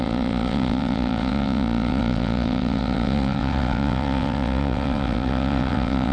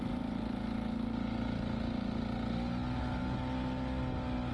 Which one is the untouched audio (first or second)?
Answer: second